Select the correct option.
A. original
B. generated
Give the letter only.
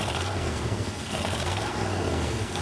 B